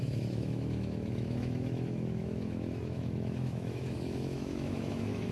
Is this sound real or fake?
fake